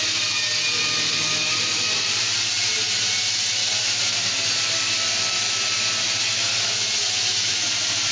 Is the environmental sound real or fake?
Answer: real